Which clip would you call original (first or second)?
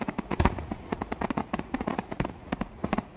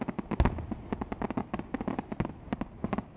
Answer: second